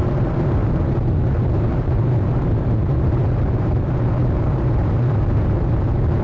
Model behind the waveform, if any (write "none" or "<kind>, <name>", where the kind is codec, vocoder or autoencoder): vocoder, BigVGAN v2